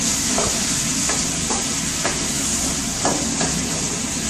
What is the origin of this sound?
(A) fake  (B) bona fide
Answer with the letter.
B